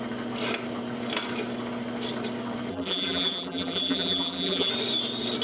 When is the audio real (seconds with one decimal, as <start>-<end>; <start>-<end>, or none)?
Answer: 0.0-2.7; 4.7-5.4